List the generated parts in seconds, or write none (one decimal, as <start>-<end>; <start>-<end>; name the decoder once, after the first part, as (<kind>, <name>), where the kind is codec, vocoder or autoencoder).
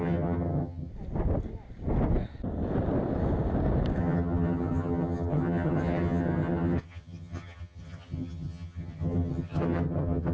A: 0.0-0.9 (vocoder, HiFi-GAN); 4.0-10.3